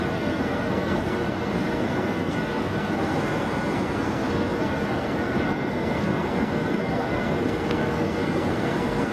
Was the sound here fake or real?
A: fake